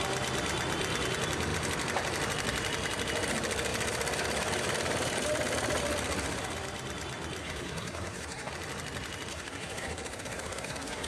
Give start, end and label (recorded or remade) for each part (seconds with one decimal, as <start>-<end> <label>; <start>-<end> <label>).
0.0-7.4 recorded; 7.4-8.5 remade; 8.5-9.3 recorded; 9.3-11.1 remade